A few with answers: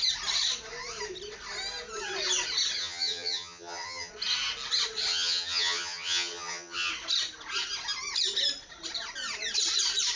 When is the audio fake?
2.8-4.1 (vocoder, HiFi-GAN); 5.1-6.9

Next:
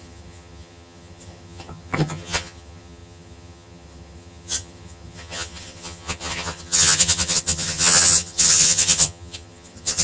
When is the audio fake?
0.0-10.0 (vocoder, HiFi-GAN)

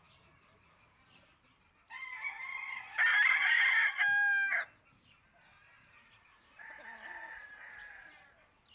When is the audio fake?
3.3-4.0 (vocoder, HiFi-GAN)

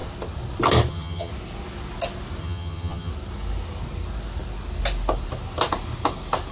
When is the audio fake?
0.9-1.3 (vocoder, HiFi-GAN); 2.4-3.1

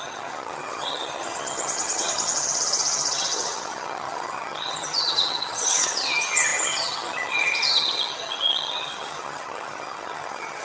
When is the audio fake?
0.0-10.6 (vocoder, HiFi-GAN)

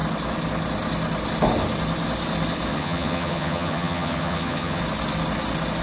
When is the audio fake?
2.7-4.8 (vocoder, HiFi-GAN)

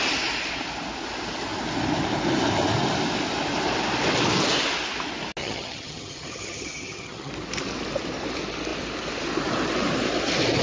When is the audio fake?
5.4-7.3 (vocoder, HiFi-GAN)